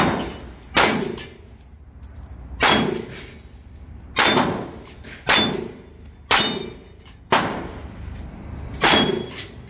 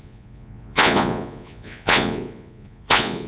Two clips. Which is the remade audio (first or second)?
second